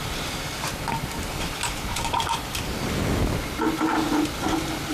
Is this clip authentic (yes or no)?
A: yes